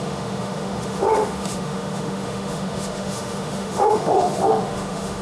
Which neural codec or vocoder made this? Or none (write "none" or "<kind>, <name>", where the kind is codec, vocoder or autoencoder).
autoencoder, DAC-VAE